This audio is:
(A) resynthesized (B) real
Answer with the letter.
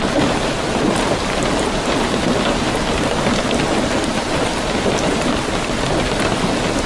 B